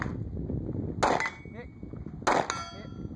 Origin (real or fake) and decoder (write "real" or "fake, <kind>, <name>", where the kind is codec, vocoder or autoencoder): real